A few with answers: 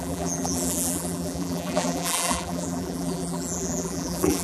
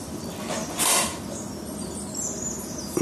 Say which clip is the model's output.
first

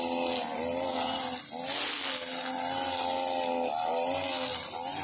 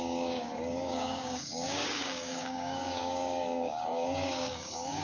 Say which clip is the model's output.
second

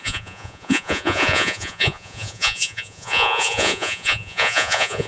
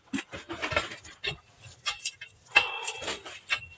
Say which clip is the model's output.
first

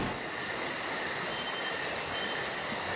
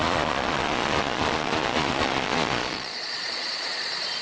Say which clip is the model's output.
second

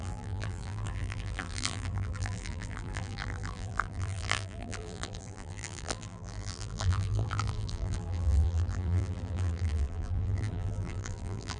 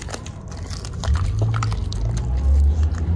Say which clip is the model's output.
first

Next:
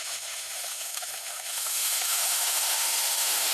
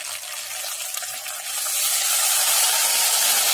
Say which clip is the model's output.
first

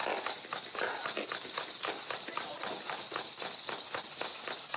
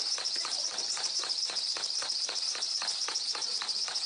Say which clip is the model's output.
second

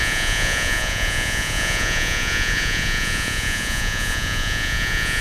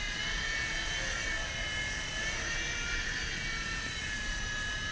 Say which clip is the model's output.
first